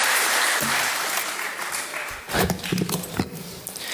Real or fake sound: fake